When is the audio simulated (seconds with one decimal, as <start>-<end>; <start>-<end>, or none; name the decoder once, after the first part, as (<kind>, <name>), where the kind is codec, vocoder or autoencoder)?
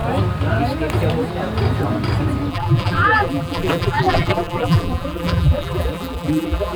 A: 2.5-6.8 (vocoder, BigVGAN v2)